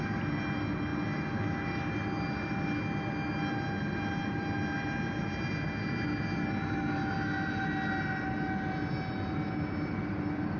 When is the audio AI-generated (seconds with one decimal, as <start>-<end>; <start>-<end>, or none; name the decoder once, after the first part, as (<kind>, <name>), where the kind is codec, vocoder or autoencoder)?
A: none